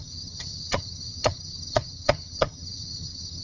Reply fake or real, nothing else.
fake